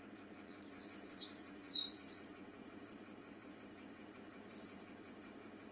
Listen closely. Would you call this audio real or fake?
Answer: fake